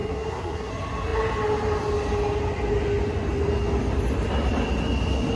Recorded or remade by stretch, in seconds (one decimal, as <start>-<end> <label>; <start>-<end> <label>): 0.0-0.7 remade; 0.7-5.4 recorded